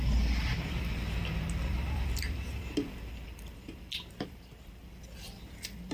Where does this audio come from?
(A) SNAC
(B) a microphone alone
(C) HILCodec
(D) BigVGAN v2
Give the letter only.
B